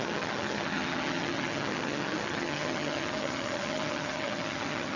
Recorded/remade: remade